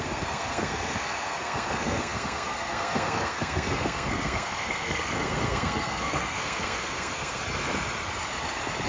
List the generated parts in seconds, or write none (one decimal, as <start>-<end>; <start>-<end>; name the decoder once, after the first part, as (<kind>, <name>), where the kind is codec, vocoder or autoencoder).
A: 0.0-7.4 (codec, SNAC)